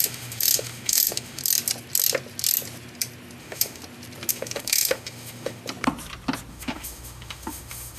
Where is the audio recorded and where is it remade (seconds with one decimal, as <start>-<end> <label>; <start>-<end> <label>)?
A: 0.0-1.4 remade; 1.4-3.4 recorded; 3.4-3.8 remade; 3.8-4.3 recorded; 4.3-5.6 remade; 5.6-6.5 recorded; 6.5-8.0 remade